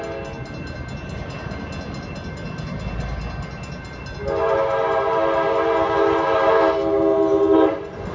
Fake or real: real